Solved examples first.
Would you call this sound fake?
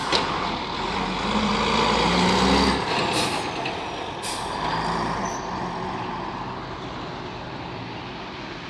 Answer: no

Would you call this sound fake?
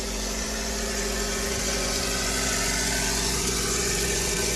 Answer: yes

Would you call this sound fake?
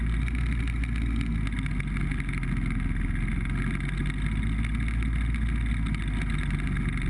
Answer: no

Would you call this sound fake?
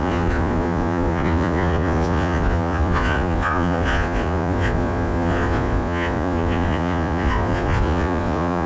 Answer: yes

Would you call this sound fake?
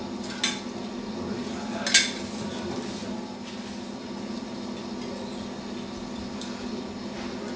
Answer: no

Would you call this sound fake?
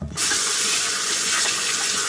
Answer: yes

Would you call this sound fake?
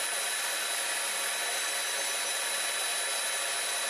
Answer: no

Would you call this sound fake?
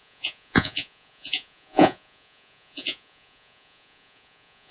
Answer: yes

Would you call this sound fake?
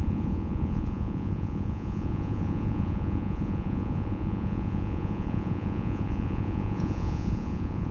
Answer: yes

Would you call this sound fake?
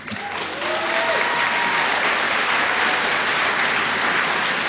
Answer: no